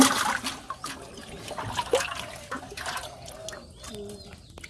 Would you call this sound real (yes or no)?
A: yes